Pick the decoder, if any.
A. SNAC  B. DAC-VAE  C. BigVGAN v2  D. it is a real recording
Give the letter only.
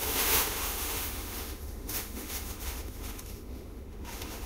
B